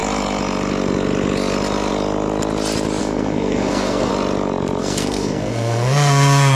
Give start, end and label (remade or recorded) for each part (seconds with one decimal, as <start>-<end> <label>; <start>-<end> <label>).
0.0-3.0 recorded; 3.0-4.1 remade; 4.1-4.8 recorded; 4.8-6.6 remade